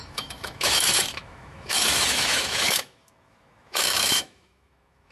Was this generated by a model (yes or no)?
yes